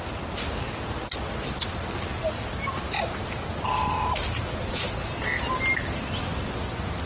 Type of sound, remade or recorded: recorded